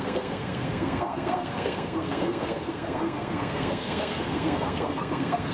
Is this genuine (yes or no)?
no